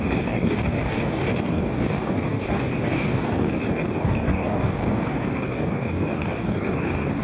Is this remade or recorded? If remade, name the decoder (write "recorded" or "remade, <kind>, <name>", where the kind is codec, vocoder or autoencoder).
remade, codec, DAC